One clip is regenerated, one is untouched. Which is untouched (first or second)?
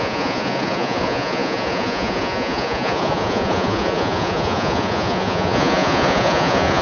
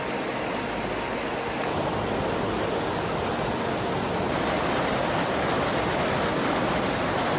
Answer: second